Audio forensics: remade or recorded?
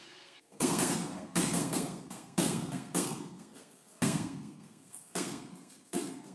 remade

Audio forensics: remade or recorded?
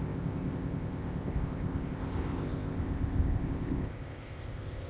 remade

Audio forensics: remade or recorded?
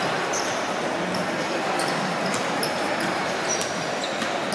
remade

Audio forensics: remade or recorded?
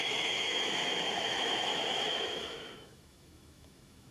remade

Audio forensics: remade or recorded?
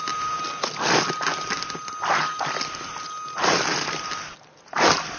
recorded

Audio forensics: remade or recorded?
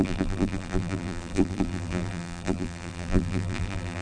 remade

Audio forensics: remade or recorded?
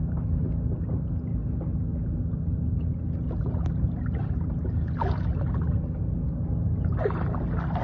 recorded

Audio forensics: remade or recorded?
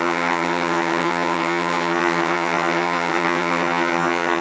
remade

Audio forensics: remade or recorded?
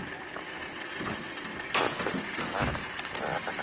recorded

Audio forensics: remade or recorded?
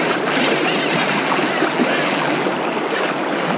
recorded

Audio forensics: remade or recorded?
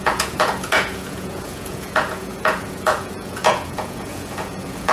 remade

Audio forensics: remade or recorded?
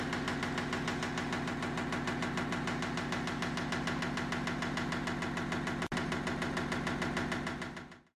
recorded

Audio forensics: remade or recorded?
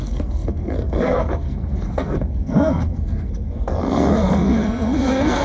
remade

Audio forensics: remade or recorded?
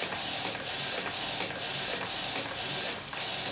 recorded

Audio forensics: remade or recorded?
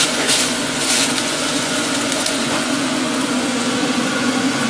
remade